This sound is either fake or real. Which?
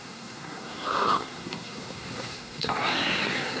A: fake